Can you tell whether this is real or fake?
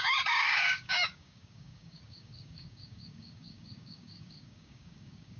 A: fake